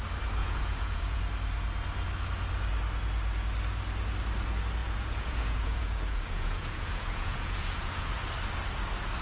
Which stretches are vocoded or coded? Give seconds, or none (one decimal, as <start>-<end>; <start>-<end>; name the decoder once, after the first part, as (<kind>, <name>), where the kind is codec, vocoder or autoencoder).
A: 0.4-1.2 (vocoder, Vocos); 4.8-8.1